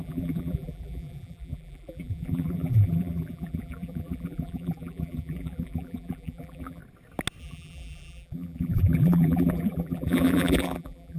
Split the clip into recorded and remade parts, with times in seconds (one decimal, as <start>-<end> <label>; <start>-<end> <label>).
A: 0.0-6.8 remade; 6.8-7.4 recorded; 7.4-11.2 remade